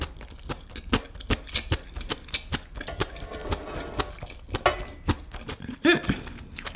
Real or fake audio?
real